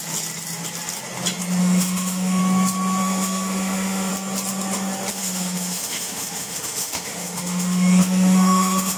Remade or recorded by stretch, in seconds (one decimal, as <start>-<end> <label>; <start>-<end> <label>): 0.0-1.6 recorded; 1.6-2.4 remade; 2.4-3.0 recorded; 3.0-4.1 remade; 4.1-5.1 recorded; 5.1-9.0 remade